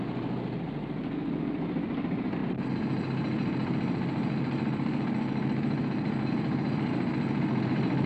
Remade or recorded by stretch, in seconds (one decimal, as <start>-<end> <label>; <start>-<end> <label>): 0.0-8.1 recorded